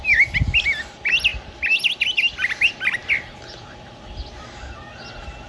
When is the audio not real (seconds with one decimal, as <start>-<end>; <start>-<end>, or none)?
none